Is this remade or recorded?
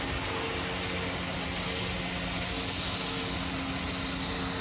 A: recorded